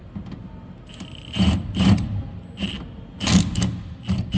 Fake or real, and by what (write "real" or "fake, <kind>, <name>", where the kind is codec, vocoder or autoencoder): real